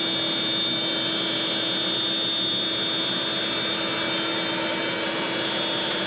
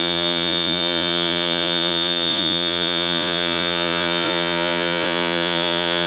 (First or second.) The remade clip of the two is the second